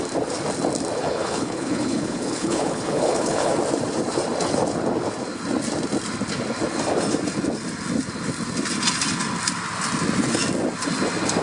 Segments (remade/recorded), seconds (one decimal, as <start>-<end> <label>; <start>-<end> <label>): 0.0-1.0 recorded; 1.0-3.5 remade; 3.5-11.4 recorded